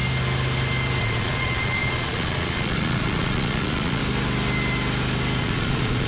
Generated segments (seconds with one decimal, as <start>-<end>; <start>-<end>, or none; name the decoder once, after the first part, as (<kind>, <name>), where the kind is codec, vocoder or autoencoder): 1.0-4.0 (vocoder, Vocos); 5.4-6.1